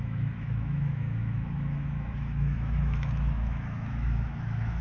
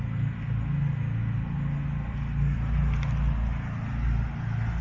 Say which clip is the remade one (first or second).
first